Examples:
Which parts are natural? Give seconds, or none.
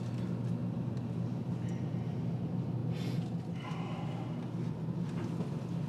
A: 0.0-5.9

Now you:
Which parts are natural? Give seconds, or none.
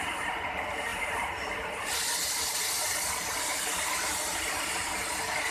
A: 0.0-5.5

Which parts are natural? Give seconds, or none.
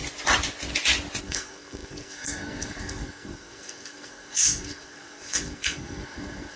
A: 0.0-1.2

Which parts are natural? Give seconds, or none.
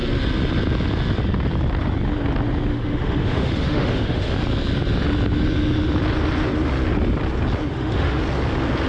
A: 0.0-2.7; 4.3-7.7; 8.2-8.9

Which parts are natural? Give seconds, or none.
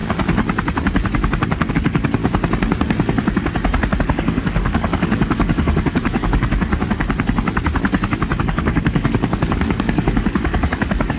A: 0.0-1.7; 2.2-4.0; 6.7-8.4